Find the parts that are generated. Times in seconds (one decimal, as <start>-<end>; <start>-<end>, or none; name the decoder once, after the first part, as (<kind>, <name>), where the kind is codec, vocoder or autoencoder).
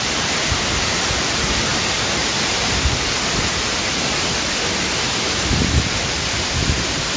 none